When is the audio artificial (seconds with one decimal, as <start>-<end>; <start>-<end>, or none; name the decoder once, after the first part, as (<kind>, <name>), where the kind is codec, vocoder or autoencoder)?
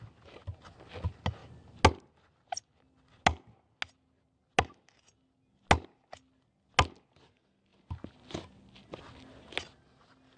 none